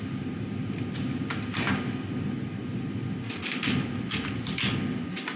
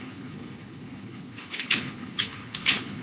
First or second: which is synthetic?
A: second